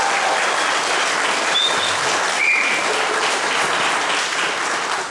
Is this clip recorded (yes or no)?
yes